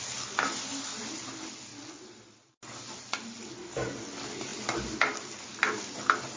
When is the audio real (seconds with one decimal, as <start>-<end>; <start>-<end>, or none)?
0.0-6.4